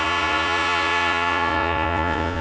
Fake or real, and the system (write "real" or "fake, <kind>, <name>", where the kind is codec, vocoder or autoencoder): fake, vocoder, Vocos